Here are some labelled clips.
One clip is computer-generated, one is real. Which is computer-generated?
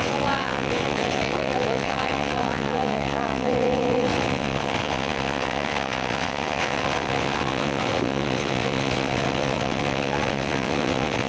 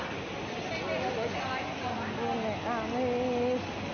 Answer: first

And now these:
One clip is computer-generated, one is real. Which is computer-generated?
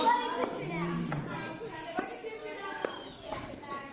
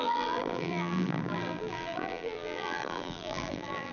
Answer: second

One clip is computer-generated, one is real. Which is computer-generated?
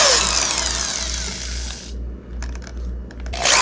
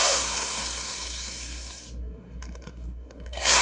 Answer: second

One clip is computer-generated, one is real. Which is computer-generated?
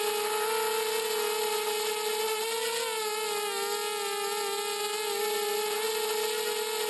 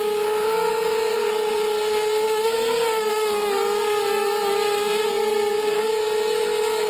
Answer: second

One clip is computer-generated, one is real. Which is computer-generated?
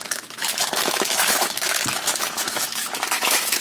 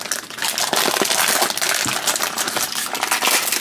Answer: first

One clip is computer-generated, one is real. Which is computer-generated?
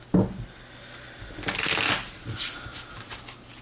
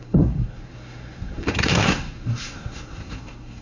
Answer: second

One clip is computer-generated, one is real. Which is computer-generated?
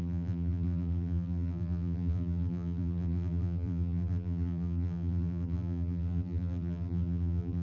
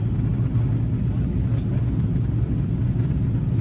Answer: first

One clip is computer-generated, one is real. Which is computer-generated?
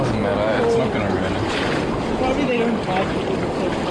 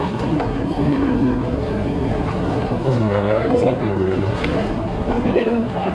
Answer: second